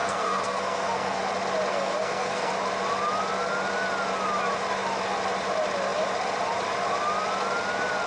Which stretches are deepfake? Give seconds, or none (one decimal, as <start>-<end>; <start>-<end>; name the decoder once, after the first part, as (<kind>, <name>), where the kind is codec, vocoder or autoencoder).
0.0-1.2 (codec, SNAC); 1.7-2.5

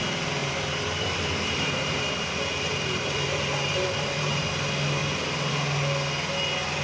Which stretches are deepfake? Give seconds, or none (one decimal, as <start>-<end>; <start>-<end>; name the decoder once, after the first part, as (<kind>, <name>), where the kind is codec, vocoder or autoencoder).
0.4-4.5 (vocoder, BigVGAN v2); 5.0-5.5